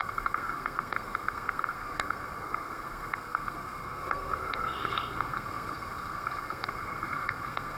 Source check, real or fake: fake